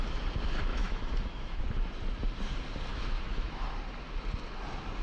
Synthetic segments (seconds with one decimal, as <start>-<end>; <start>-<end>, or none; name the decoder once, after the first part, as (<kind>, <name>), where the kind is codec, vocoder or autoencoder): 0.7-1.6 (autoencoder, DAC-VAE); 2.9-3.6